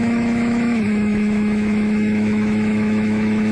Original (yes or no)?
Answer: no